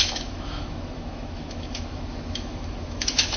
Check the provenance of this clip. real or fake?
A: fake